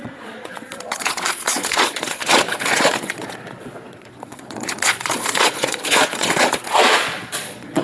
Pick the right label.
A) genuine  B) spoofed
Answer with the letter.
B